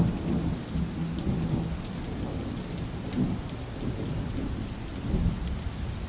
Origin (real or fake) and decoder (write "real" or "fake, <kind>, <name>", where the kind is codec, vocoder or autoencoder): real